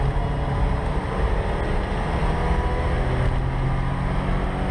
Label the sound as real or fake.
real